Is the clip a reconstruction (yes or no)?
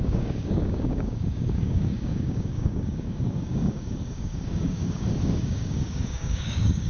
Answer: yes